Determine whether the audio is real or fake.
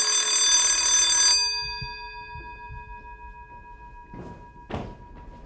real